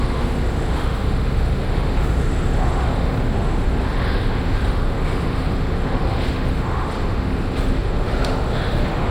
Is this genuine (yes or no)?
no